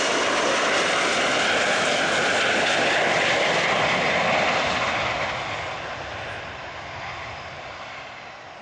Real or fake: real